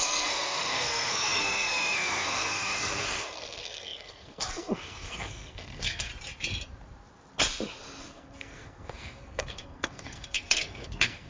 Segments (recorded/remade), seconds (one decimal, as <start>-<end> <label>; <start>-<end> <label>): 0.0-6.1 remade; 6.1-8.0 recorded; 8.0-11.3 remade